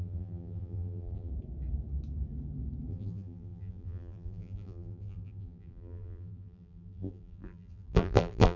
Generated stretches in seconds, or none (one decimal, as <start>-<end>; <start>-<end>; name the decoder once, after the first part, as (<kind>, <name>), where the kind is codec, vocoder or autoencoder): 0.0-1.3 (vocoder, BigVGAN v2); 2.9-8.6